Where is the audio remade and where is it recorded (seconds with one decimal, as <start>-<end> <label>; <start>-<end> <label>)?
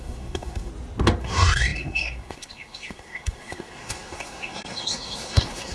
0.0-0.7 remade; 0.7-1.2 recorded; 1.2-5.7 remade